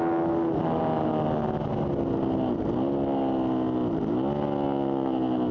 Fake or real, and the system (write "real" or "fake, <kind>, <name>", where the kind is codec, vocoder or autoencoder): real